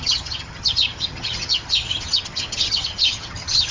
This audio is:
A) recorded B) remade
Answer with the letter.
B